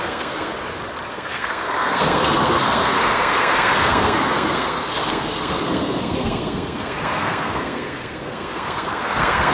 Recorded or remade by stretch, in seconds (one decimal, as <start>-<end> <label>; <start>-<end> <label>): 0.0-0.5 remade; 0.5-1.1 recorded; 1.1-9.5 remade